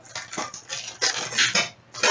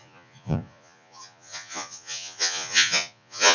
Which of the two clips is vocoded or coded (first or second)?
second